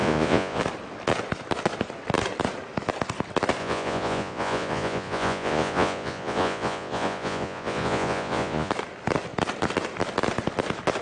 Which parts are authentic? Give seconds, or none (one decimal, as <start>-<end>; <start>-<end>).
0.6-3.6; 8.7-11.0